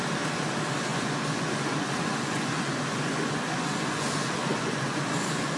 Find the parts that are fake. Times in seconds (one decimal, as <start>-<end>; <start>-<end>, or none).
0.9-4.1; 4.5-5.6